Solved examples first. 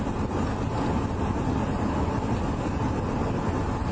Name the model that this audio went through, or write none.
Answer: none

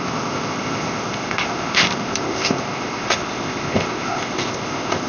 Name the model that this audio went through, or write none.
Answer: codec, ZipCodec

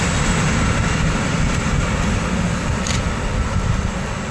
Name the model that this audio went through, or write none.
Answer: none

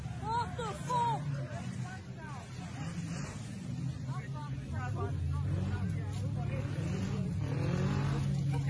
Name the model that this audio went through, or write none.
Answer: none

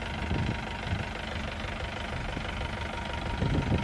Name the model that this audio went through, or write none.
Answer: none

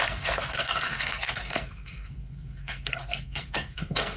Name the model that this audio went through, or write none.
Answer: codec, SNAC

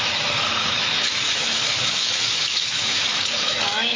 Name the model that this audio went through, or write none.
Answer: autoencoder, DAC-VAE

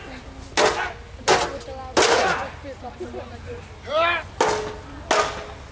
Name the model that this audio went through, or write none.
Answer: none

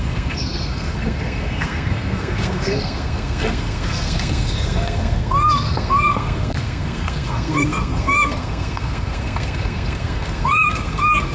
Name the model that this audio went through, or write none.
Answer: codec, SNAC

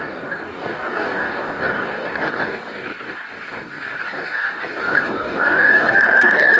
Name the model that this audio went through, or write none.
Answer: codec, DAC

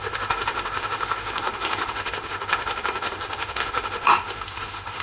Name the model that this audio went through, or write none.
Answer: autoencoder, DAC-VAE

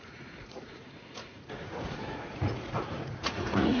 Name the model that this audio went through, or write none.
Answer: vocoder, Vocos